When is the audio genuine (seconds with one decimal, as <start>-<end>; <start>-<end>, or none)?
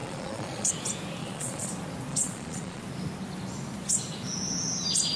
0.7-1.2; 1.7-2.1; 2.8-5.2